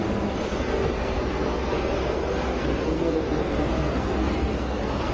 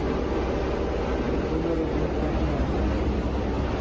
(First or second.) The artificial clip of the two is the first